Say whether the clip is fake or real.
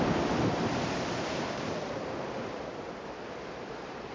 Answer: fake